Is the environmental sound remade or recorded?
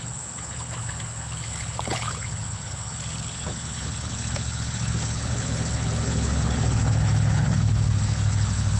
remade